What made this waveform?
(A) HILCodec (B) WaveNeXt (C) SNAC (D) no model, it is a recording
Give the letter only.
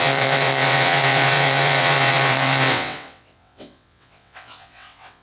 B